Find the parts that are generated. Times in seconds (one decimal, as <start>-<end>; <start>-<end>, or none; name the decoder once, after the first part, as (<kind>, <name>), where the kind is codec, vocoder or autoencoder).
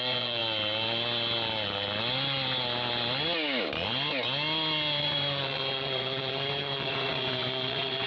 0.0-0.4 (vocoder, Vocos); 5.0-8.1